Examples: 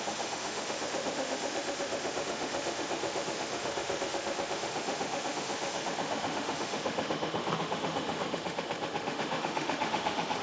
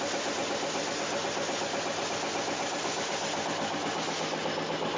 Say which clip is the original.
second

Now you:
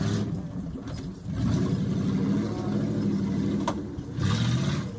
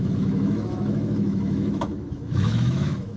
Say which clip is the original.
first